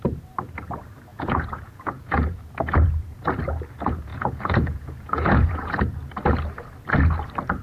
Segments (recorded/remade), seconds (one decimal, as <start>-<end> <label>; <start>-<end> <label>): 0.0-1.1 recorded; 1.1-2.4 remade; 2.4-4.1 recorded; 4.1-5.8 remade; 5.8-7.6 recorded